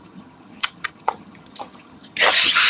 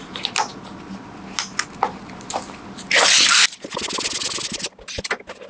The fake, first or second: first